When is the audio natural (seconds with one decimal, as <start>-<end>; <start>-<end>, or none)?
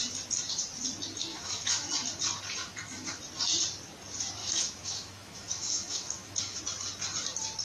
0.0-1.3; 1.9-2.6; 3.2-4.4; 6.6-7.6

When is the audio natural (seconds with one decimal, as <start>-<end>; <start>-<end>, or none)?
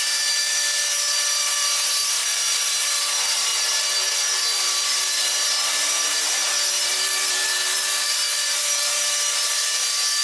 3.5-4.1